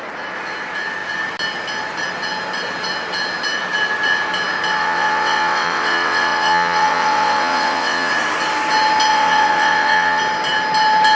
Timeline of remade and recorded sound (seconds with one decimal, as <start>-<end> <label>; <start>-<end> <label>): 0.0-4.8 recorded; 4.8-8.1 remade; 8.1-9.1 recorded; 9.1-10.2 remade; 10.2-11.2 recorded